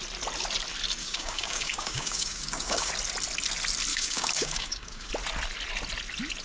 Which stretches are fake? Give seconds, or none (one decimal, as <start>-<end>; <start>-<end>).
1.0-2.9; 3.9-5.1